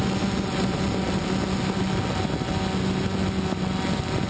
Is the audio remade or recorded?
recorded